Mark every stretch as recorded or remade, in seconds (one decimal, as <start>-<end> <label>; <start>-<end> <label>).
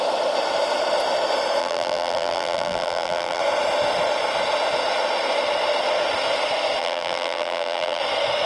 0.0-1.6 recorded; 1.6-3.4 remade; 3.4-6.8 recorded; 6.8-8.0 remade; 8.0-8.5 recorded